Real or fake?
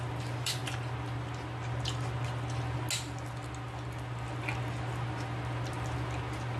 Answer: real